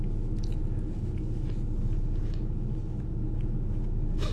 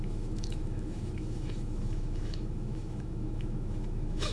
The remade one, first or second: second